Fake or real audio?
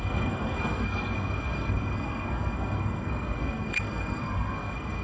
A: fake